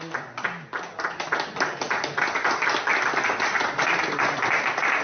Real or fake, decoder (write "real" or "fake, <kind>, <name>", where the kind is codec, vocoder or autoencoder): real